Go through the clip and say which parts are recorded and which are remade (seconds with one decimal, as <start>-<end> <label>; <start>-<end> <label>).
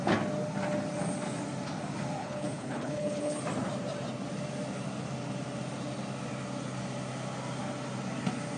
0.0-2.2 recorded; 2.2-3.4 remade; 3.4-8.6 recorded